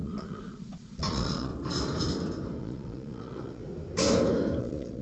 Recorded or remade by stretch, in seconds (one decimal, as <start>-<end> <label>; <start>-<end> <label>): 0.0-1.5 remade; 1.5-2.6 recorded; 2.6-3.6 remade; 3.6-4.6 recorded; 4.6-5.0 remade